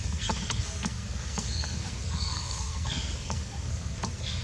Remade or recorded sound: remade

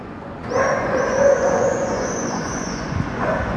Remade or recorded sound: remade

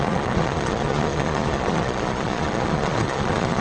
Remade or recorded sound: remade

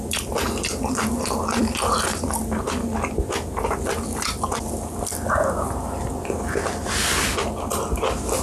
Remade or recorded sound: recorded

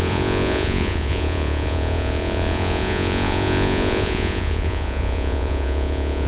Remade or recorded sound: remade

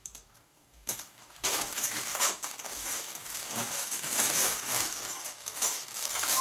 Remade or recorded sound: remade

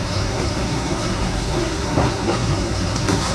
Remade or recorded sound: remade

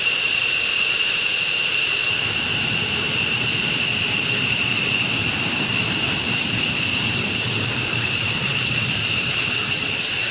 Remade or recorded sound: remade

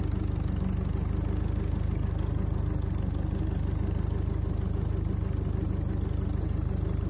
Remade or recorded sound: recorded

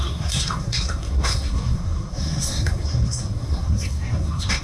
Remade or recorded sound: remade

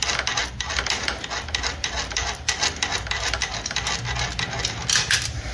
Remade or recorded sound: recorded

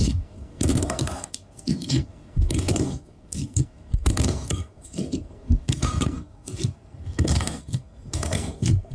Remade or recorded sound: remade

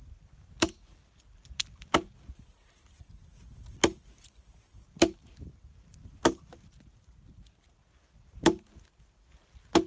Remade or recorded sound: recorded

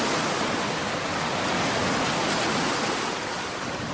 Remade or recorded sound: recorded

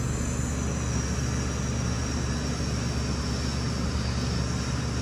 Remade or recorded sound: recorded